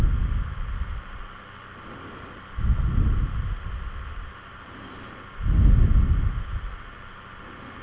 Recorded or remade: recorded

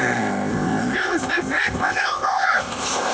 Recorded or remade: remade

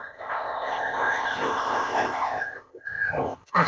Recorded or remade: remade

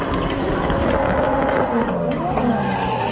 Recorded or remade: recorded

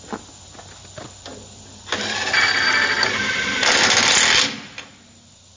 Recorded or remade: recorded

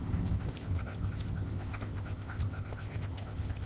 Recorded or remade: remade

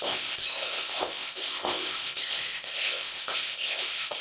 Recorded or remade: remade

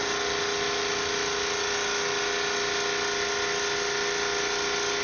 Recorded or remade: recorded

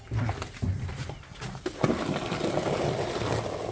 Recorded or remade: recorded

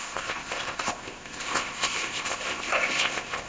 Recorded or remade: remade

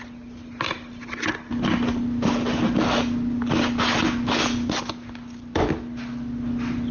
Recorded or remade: recorded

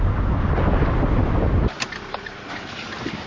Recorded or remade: recorded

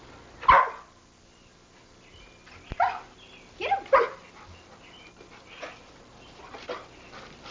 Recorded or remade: recorded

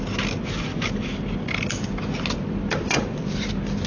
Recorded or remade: recorded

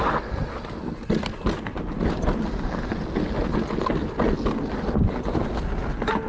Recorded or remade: recorded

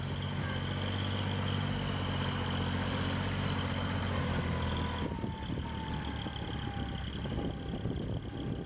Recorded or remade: recorded